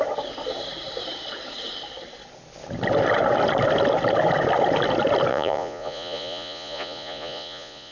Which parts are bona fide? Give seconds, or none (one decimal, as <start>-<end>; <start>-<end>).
0.0-5.3